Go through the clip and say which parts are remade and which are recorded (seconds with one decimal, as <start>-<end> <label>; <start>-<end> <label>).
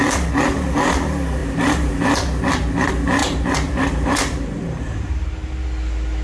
0.0-1.4 recorded; 1.4-1.9 remade; 1.9-3.2 recorded; 3.2-5.5 remade; 5.5-6.2 recorded